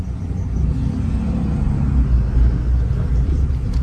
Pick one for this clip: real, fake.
real